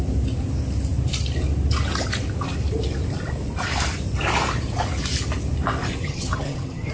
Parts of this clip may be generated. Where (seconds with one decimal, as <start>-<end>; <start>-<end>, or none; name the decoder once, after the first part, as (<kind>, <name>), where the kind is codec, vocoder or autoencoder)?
6.0-6.9 (vocoder, HiFi-GAN)